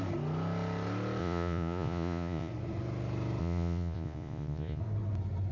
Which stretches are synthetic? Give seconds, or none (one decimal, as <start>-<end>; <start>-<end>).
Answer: 1.2-2.5; 3.4-4.8